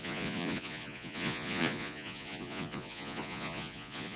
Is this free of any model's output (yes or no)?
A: no